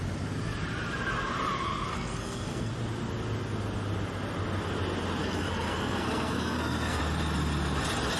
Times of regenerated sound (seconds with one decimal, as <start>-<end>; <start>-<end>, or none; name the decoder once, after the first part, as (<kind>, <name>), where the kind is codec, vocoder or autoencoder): 1.9-2.7 (codec, SNAC); 5.2-7.0